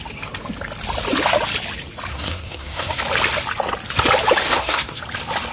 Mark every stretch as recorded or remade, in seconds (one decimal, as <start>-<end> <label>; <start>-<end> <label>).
0.0-2.1 recorded; 2.1-3.0 remade; 3.0-4.4 recorded; 4.4-5.0 remade; 5.0-5.5 recorded